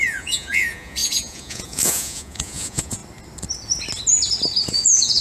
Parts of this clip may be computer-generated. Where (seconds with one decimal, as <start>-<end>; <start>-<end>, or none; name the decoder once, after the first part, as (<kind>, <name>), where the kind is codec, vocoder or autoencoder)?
0.0-3.0 (vocoder, Vocos); 4.7-5.2